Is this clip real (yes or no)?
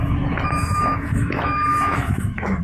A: no